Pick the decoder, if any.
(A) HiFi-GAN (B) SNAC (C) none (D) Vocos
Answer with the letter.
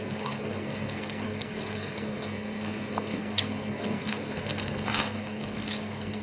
B